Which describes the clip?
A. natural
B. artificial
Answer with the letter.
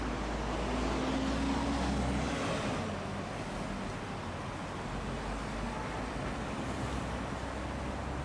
A